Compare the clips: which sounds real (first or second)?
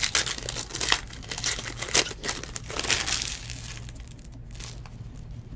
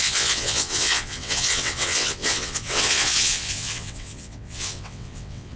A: first